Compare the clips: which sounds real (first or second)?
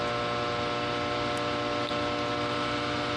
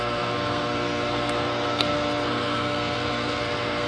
first